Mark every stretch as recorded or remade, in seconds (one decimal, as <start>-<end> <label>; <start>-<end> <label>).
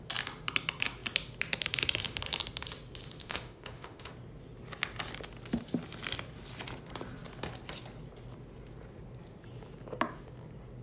0.0-3.2 recorded; 3.2-4.1 remade; 4.1-10.8 recorded